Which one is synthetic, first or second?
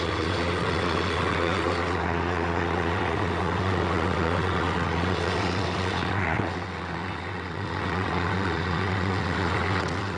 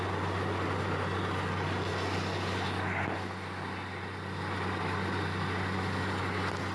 first